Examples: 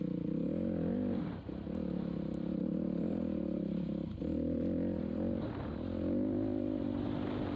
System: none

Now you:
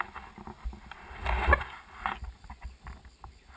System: none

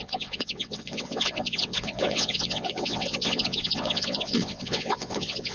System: vocoder, WaveNeXt